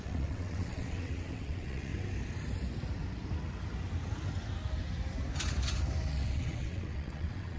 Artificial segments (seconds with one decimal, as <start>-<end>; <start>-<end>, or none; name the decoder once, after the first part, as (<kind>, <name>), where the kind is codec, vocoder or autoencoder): 0.0-1.9 (vocoder, WaveNeXt); 6.1-7.6